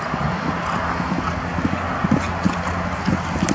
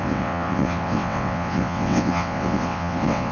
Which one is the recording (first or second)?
first